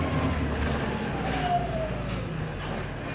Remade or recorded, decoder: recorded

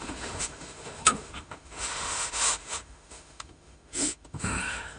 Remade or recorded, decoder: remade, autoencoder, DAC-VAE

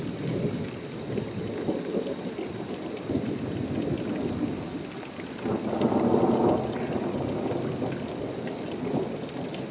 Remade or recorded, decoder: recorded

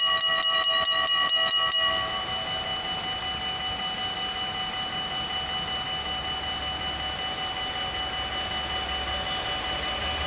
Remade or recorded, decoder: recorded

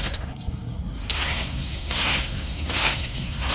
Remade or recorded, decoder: remade, codec, SNAC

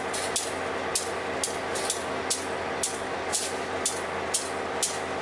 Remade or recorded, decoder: recorded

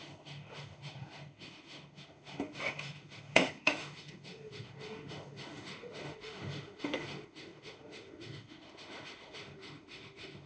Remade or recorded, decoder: remade, autoencoder, DAC-VAE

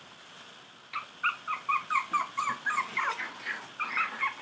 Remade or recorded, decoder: recorded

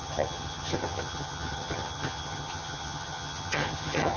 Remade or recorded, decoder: remade, vocoder, HiFi-GAN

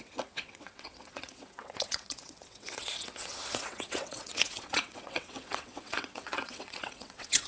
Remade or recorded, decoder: remade, vocoder, WaveNeXt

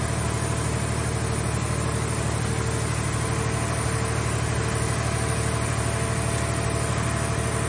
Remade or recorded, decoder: recorded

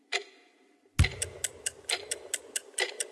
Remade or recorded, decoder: recorded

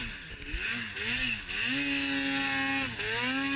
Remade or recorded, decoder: recorded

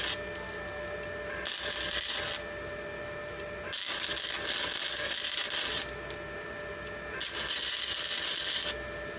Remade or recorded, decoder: recorded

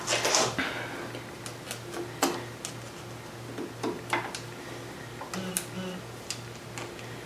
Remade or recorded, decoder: recorded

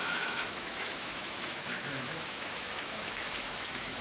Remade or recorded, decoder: remade, autoencoder, DAC-VAE